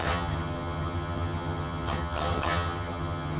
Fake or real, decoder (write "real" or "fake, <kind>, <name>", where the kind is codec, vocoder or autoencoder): fake, vocoder, HiFi-GAN